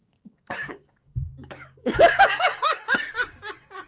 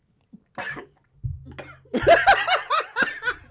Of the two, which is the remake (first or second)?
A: first